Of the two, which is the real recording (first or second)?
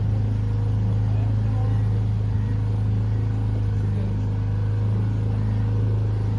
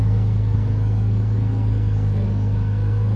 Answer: first